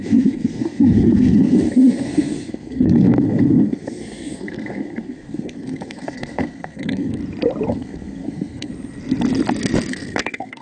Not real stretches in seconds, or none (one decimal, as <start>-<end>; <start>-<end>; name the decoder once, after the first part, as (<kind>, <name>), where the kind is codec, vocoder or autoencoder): 0.0-7.2 (codec, SNAC); 7.7-8.7; 9.9-10.6